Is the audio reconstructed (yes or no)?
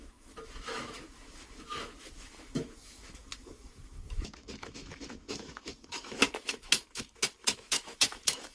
yes